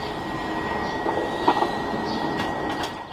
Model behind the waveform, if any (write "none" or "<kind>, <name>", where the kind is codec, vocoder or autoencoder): none